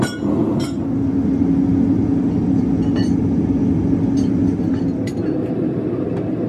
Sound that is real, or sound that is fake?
real